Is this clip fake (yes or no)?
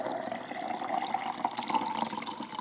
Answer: no